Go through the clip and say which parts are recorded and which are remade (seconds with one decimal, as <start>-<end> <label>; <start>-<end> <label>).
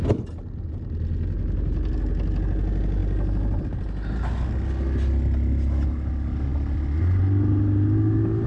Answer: 0.0-8.5 recorded